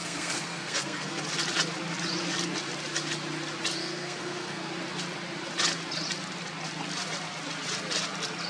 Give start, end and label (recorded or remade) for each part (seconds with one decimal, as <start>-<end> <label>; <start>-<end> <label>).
0.0-1.2 remade; 1.2-3.8 recorded; 3.8-4.7 remade; 4.7-8.5 recorded